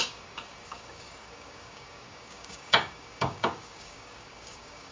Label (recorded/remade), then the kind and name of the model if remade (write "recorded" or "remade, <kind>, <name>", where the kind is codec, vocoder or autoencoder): remade, codec, DAC